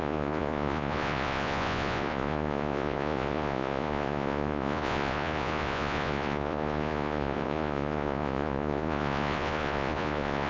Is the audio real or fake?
fake